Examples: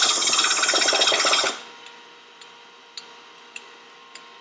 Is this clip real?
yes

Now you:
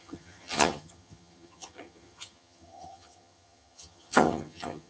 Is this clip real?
no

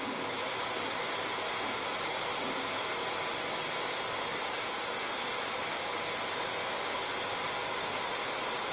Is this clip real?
yes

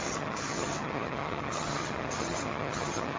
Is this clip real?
no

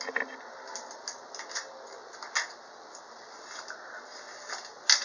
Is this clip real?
yes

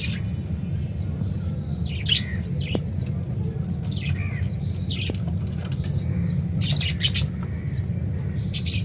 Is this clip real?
yes